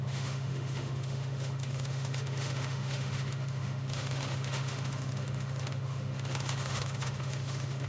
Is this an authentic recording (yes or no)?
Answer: no